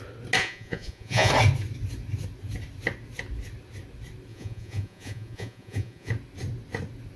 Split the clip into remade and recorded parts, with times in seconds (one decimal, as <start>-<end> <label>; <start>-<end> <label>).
0.0-0.4 recorded; 0.4-1.3 remade; 1.3-4.3 recorded; 4.3-6.1 remade; 6.1-7.2 recorded